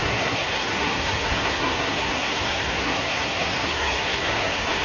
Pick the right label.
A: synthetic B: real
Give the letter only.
A